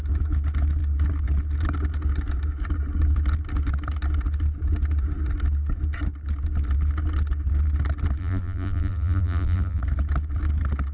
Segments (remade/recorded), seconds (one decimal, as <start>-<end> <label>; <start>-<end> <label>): 0.0-8.2 recorded; 8.2-9.8 remade; 9.8-10.9 recorded

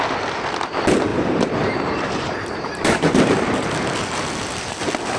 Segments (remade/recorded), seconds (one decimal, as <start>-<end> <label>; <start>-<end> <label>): 0.0-1.1 recorded; 1.1-3.4 remade; 3.4-5.2 recorded

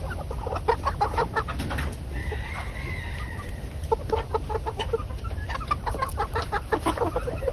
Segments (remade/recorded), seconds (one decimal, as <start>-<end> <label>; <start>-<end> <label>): 0.0-2.2 recorded; 2.2-3.8 remade; 3.8-6.1 recorded; 6.1-7.5 remade